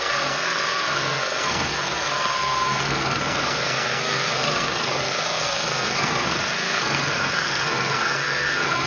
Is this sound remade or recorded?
remade